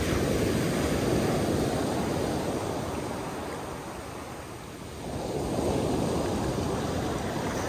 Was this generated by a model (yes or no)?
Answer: no